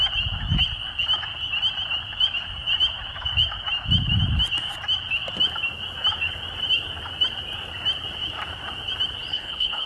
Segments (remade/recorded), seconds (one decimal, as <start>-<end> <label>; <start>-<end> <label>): 0.0-9.3 recorded; 9.3-9.9 remade